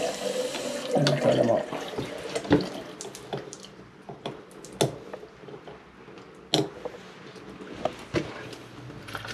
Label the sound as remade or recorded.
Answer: recorded